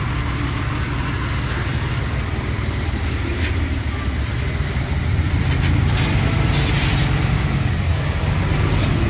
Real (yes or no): yes